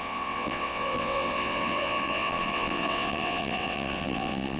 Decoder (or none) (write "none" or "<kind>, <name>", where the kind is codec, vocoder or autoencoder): vocoder, WaveNeXt